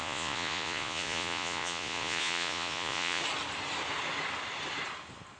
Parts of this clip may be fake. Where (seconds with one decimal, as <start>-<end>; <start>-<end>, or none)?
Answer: 0.0-3.2

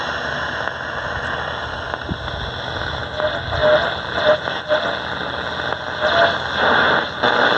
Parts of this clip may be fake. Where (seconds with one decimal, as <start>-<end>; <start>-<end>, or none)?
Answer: none

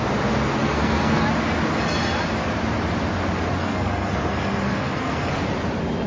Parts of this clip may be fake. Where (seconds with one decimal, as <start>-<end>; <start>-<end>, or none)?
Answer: 0.6-1.2; 3.6-5.3

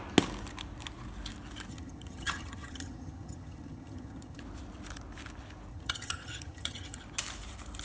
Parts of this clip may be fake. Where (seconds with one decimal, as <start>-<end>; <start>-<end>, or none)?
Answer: 1.7-4.4; 5.7-7.0

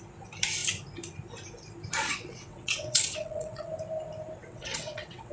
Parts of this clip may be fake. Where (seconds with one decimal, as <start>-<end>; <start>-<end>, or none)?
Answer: 2.1-3.7; 4.4-5.3

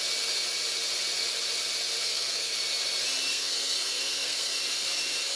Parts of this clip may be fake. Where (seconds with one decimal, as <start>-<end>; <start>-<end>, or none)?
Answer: 2.0-2.5; 3.3-4.6